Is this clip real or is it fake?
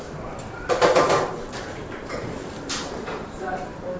fake